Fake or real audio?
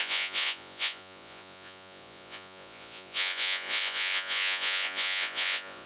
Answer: fake